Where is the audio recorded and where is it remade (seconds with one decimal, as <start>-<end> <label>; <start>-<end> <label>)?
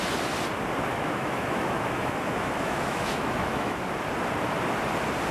0.0-0.9 recorded; 0.9-3.8 remade; 3.8-5.3 recorded